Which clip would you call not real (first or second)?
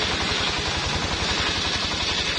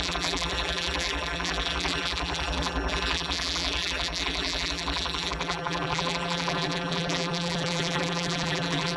second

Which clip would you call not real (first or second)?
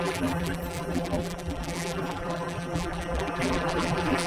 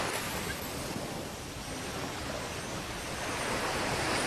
first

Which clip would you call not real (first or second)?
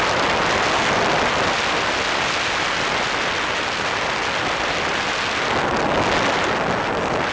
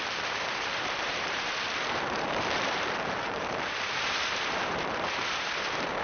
second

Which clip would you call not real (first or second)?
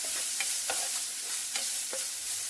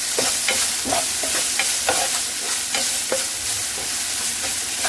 first